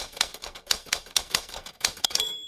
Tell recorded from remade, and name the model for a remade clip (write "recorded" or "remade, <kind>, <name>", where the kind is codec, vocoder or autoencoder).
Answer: remade, codec, SNAC